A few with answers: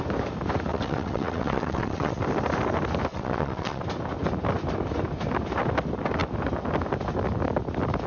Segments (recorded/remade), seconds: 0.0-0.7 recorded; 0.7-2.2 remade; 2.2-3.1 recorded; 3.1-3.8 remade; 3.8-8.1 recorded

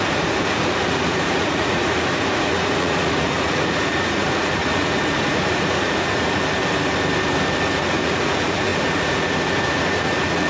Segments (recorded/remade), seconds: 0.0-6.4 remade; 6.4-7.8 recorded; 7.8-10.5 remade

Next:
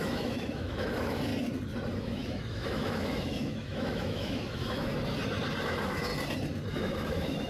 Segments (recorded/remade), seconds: 0.0-1.3 remade; 1.3-2.0 recorded; 2.0-4.9 remade; 4.9-5.6 recorded; 5.6-6.1 remade; 6.1-6.7 recorded; 6.7-7.5 remade

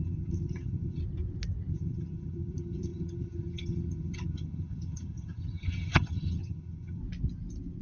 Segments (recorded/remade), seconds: 0.0-1.0 remade; 1.0-1.7 recorded; 1.7-7.0 remade; 7.0-7.8 recorded